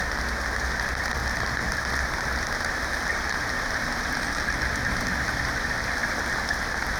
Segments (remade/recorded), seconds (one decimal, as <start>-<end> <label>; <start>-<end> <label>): 0.0-7.0 recorded